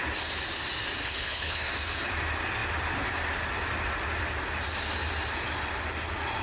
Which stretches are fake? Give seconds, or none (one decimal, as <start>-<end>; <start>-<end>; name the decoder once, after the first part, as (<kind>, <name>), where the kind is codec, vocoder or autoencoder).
1.0-1.7 (codec, HILCodec)